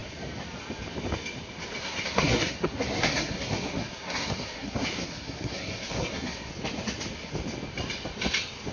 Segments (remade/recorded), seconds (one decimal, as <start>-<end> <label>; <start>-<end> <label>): 0.0-1.8 recorded; 1.8-6.5 remade; 6.5-8.7 recorded